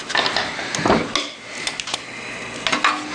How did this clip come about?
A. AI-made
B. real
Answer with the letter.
B